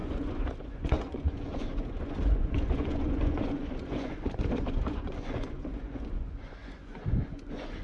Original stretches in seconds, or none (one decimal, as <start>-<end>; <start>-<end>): none